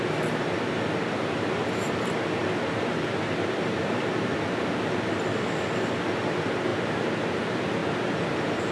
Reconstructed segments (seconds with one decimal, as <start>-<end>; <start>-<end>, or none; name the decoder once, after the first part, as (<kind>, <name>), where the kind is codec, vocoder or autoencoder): 2.4-4.3 (vocoder, BigVGAN v2); 6.7-7.3; 7.8-8.7

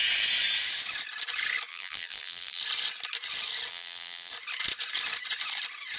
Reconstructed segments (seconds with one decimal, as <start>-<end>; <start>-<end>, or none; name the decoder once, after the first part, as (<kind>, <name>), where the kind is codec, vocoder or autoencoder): 1.7-2.6 (vocoder, BigVGAN v2); 3.7-4.3